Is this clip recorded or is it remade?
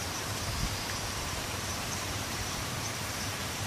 remade